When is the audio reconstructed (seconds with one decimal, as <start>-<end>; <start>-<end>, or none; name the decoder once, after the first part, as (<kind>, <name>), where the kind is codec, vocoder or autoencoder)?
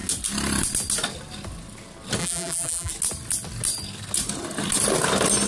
2.2-2.9 (vocoder, BigVGAN v2)